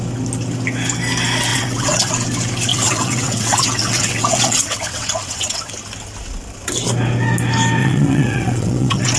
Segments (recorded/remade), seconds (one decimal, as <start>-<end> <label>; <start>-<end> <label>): 0.0-1.5 recorded; 1.5-2.1 remade; 2.1-2.7 recorded; 2.7-5.7 remade; 5.7-7.8 recorded; 7.8-9.2 remade